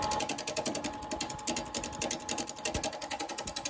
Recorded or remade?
recorded